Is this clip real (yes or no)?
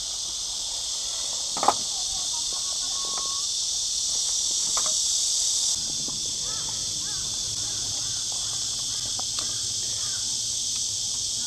yes